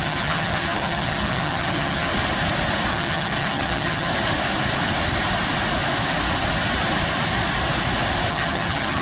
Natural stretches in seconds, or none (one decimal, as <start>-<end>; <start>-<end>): 2.1-2.9; 4.1-8.3